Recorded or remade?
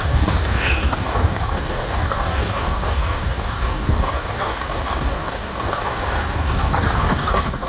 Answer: remade